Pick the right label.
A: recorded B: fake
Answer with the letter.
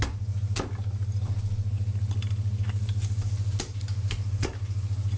A